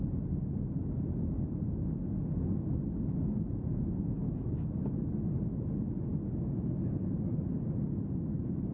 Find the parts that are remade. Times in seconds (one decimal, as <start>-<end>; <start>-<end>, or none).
3.5-4.5